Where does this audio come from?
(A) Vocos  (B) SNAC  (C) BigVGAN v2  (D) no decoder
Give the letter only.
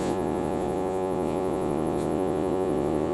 A